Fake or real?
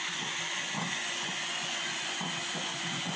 fake